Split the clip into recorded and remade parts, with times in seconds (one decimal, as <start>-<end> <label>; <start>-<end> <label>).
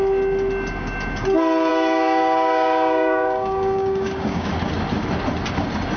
0.0-1.7 recorded; 1.7-4.5 remade; 4.5-6.0 recorded